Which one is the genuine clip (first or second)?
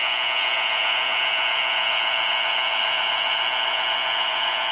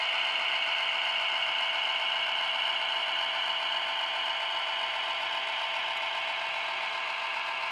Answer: second